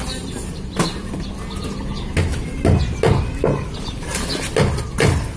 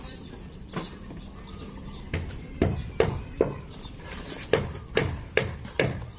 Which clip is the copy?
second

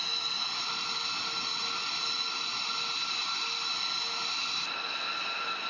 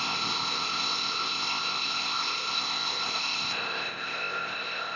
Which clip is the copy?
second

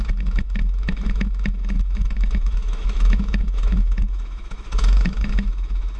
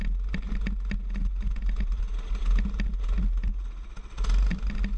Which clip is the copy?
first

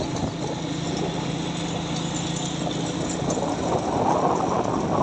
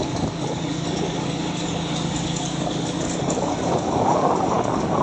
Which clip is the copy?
second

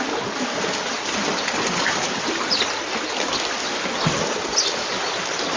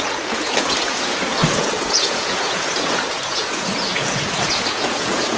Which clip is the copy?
second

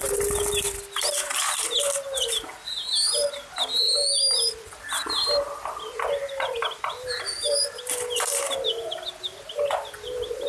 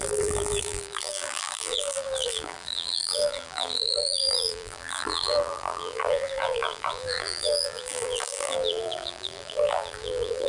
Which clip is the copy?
second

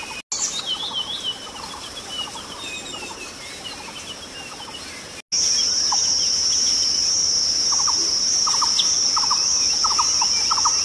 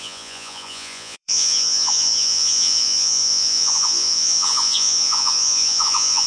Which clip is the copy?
second